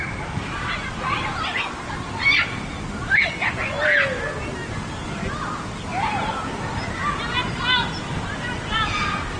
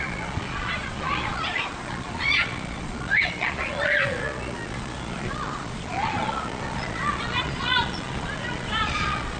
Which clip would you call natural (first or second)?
first